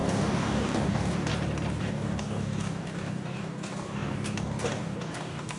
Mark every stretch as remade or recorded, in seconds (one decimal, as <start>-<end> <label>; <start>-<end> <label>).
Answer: 0.0-1.3 remade; 1.3-1.8 recorded; 1.8-5.6 remade